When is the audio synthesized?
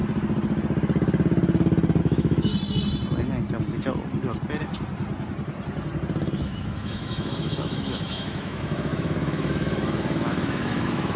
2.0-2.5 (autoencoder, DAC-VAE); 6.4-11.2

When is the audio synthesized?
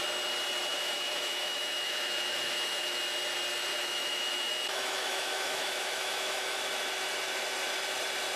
0.7-3.0 (autoencoder, DAC-VAE); 3.7-6.6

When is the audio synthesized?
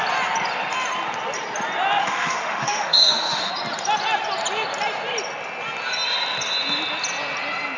2.0-3.5 (autoencoder, DAC-VAE)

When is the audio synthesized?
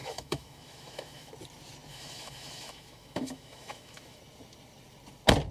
0.0-1.3 (autoencoder, DAC-VAE); 1.9-4.2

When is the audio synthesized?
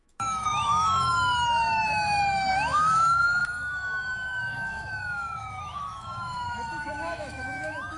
0.0-8.0 (autoencoder, DAC-VAE)